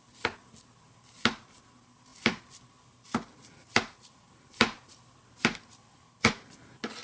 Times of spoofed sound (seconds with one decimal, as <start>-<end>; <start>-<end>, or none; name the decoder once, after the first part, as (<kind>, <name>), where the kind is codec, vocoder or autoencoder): 2.1-6.3 (vocoder, BigVGAN v2)